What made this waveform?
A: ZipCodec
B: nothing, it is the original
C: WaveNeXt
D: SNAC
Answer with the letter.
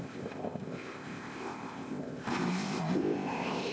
A